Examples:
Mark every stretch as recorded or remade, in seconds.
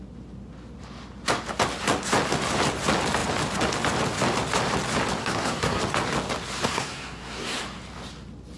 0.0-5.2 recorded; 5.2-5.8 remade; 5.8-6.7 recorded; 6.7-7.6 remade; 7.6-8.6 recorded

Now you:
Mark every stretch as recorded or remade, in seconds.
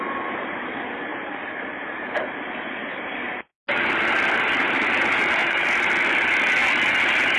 0.0-5.4 recorded; 5.4-5.9 remade; 5.9-7.4 recorded